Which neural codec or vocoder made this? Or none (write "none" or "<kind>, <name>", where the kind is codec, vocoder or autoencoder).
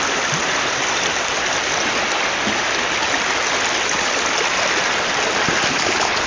none